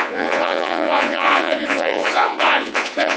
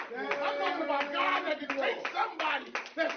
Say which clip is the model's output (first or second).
first